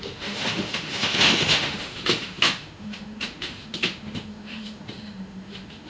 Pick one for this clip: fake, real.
fake